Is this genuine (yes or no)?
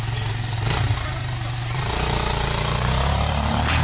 no